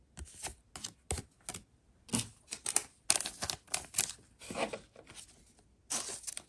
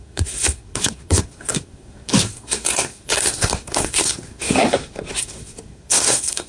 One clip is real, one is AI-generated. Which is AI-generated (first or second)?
second